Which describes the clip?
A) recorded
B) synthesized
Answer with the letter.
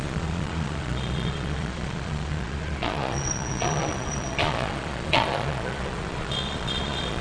B